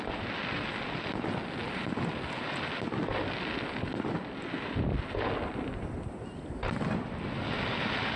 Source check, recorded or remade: recorded